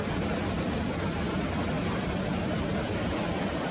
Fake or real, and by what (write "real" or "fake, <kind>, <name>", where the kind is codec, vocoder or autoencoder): real